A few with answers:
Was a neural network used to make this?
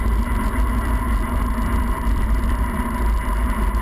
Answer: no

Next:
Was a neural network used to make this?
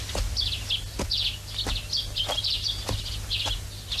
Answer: no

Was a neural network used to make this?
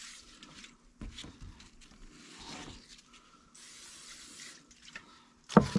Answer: no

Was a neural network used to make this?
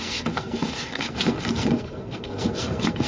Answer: yes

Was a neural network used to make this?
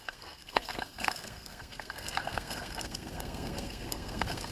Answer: yes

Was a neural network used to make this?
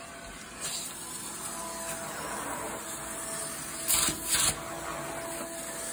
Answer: no